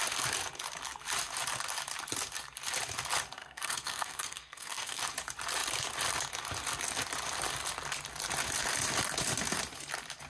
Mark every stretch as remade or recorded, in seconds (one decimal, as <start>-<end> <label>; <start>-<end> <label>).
0.0-3.4 recorded; 3.4-5.0 remade; 5.0-10.3 recorded

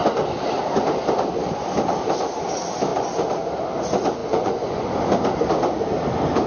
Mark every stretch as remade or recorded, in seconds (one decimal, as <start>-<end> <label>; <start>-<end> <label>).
0.0-4.2 recorded; 4.2-4.9 remade; 4.9-6.5 recorded